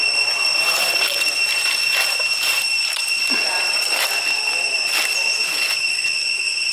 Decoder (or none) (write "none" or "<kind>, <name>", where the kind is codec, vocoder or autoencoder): none